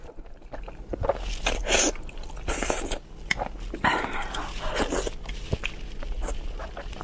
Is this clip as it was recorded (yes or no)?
yes